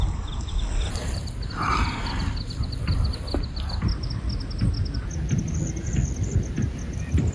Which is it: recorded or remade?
recorded